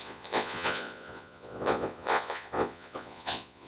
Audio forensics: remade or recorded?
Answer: remade